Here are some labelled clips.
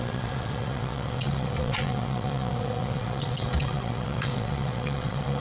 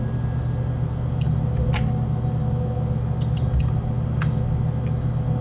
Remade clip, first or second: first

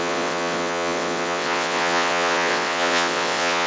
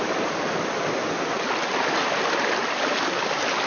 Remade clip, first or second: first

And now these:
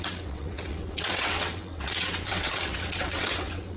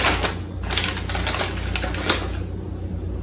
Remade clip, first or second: first